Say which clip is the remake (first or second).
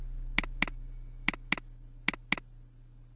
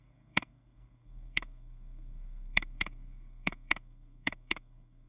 second